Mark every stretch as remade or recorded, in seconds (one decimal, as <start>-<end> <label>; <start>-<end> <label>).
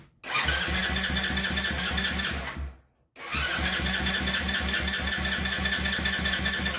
0.0-6.8 recorded